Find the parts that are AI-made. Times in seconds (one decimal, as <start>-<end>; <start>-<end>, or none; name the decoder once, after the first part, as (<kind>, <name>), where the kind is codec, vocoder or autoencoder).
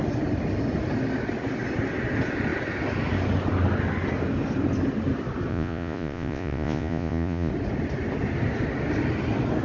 5.5-7.5 (vocoder, Vocos)